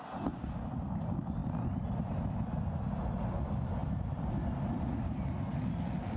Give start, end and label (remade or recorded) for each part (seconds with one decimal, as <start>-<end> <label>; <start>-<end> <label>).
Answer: 0.0-6.2 recorded